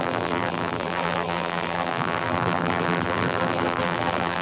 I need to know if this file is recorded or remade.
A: remade